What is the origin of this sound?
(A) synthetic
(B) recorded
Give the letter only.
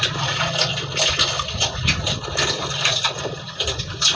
B